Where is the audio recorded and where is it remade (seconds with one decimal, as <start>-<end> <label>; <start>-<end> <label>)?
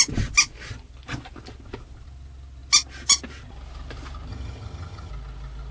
0.0-4.3 recorded; 4.3-5.1 remade; 5.1-5.7 recorded